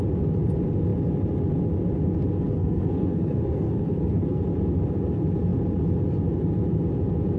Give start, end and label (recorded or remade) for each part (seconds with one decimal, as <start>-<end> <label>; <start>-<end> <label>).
0.0-2.5 recorded; 2.5-4.4 remade; 4.4-7.4 recorded